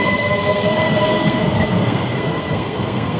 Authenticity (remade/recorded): remade